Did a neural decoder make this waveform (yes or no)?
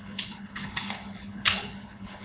yes